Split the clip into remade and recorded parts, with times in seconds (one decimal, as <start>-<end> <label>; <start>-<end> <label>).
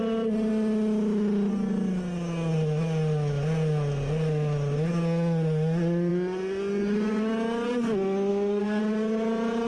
0.0-8.3 recorded; 8.3-8.8 remade; 8.8-9.7 recorded